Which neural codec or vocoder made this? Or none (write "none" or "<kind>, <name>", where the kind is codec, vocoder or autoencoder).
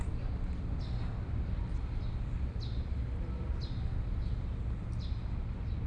none